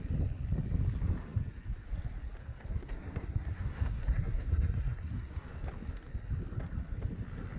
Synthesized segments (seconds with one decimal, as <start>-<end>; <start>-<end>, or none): 2.4-5.5